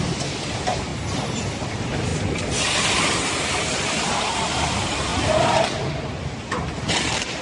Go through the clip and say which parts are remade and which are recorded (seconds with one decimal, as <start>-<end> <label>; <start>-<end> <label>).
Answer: 0.0-0.9 remade; 0.9-1.7 recorded; 1.7-2.1 remade; 2.1-3.6 recorded; 3.6-5.1 remade; 5.1-6.8 recorded; 6.8-7.4 remade